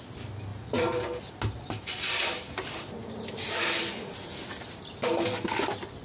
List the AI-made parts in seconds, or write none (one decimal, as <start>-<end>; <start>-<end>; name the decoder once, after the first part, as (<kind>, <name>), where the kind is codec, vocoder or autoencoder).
0.5-1.3 (vocoder, BigVGAN v2)